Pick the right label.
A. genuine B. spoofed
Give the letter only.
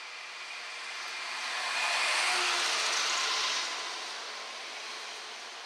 A